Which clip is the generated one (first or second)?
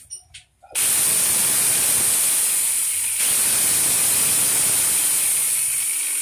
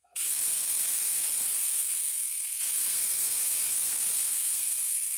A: second